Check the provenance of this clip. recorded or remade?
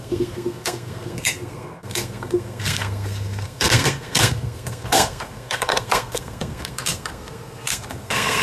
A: remade